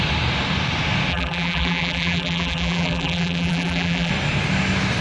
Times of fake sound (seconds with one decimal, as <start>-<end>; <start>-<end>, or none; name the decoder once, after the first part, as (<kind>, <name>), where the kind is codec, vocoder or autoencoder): 1.1-4.1 (vocoder, BigVGAN v2)